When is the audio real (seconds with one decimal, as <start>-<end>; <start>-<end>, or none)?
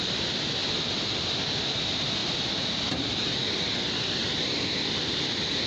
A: 0.6-1.6; 2.2-3.3